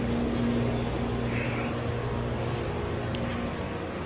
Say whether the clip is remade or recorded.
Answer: recorded